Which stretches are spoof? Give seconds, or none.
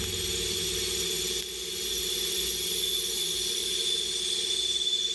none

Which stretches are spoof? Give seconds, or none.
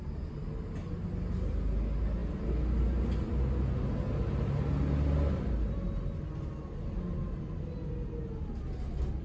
none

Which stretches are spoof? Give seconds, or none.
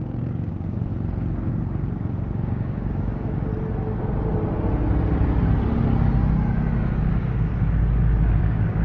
0.0-0.9 (codec, DAC); 1.5-3.5; 7.0-7.5; 8.4-8.8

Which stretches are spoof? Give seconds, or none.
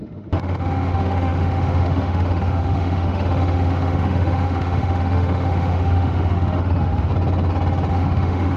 0.0-7.1 (autoencoder, DAC-VAE); 7.9-8.6